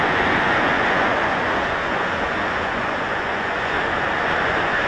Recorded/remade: remade